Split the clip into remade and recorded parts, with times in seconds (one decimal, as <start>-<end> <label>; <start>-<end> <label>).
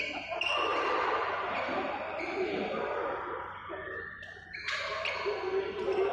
0.0-4.9 remade; 4.9-6.1 recorded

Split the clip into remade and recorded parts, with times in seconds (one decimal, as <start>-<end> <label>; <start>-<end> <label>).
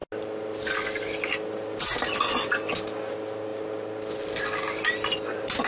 0.0-5.7 recorded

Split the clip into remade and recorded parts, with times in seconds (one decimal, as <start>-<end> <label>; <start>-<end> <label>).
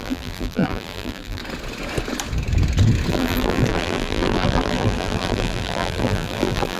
0.0-1.4 remade; 1.4-3.1 recorded; 3.1-6.8 remade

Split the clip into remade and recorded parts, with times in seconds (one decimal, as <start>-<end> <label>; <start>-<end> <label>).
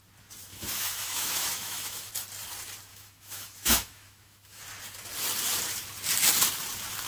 0.0-0.5 recorded; 0.5-2.1 remade; 2.1-2.9 recorded; 2.9-4.6 remade; 4.6-7.1 recorded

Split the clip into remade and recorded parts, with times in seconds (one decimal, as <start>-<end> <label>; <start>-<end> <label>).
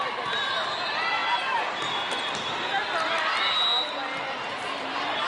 0.0-5.3 recorded